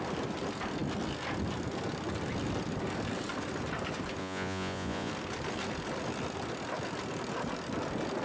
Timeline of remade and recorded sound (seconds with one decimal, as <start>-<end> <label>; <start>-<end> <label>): 0.0-4.2 recorded; 4.2-5.1 remade; 5.1-8.2 recorded